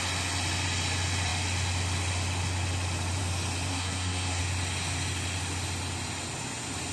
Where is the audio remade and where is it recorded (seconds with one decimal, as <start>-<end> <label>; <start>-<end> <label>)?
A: 0.0-3.7 recorded; 3.7-4.4 remade; 4.4-6.9 recorded